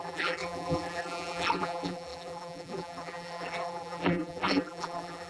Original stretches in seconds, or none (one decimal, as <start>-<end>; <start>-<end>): none